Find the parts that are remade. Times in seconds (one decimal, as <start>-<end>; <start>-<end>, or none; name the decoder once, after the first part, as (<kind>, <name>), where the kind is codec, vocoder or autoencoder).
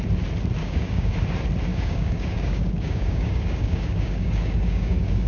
0.6-1.1 (codec, DAC); 1.7-5.3